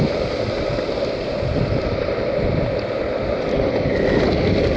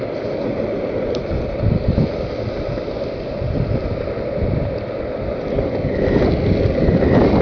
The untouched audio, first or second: second